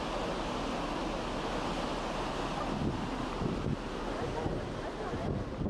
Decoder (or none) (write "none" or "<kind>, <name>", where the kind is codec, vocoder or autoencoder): none